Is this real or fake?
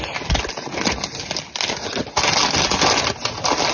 real